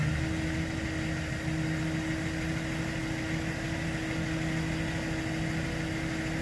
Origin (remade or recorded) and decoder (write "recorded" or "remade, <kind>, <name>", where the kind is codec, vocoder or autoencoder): recorded